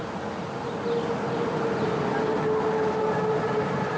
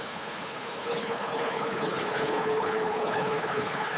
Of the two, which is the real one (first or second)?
first